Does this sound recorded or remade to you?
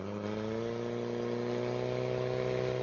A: recorded